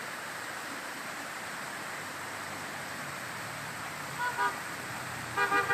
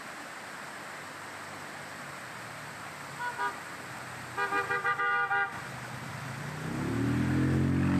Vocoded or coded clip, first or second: first